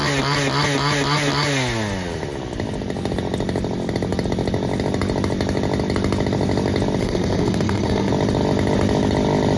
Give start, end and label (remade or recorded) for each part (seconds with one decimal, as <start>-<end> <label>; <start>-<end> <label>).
0.0-7.0 recorded; 7.0-8.1 remade; 8.1-9.6 recorded